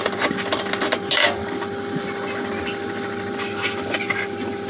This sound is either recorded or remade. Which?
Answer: recorded